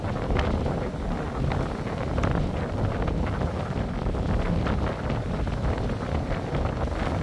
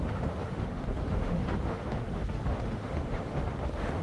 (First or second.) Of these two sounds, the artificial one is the second